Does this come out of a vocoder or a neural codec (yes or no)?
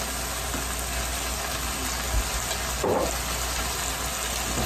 no